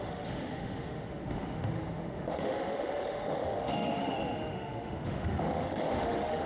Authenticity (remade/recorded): remade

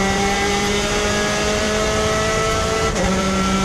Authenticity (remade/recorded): remade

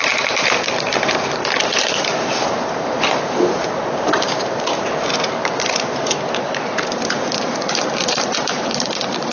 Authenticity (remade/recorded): remade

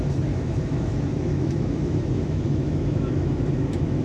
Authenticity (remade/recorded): remade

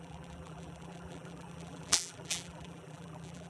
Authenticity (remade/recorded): remade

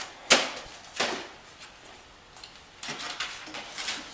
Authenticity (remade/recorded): recorded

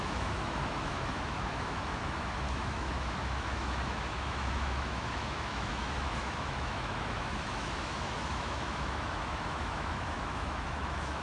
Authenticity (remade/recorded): remade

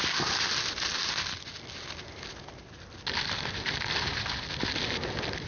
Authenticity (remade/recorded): recorded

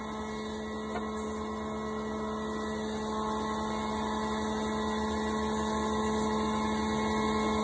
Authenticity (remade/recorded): recorded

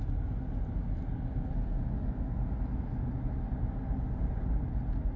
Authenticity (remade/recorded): recorded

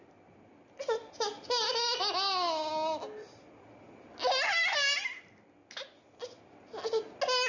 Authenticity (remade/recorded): recorded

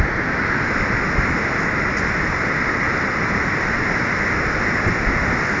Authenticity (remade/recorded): recorded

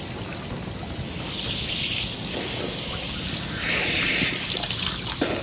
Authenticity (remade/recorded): recorded